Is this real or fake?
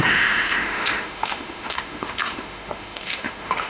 fake